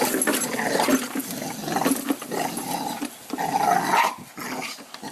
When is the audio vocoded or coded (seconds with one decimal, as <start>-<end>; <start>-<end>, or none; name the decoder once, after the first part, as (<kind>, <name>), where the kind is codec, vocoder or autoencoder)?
none